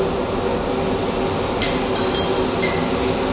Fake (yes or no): no